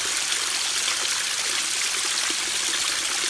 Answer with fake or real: real